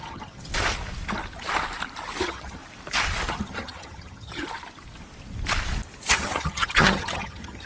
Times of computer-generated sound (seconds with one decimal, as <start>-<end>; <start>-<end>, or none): 0.0-0.5; 2.2-2.6; 3.3-4.4; 6.1-7.7